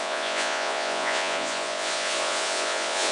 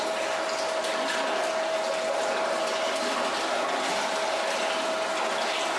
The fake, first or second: first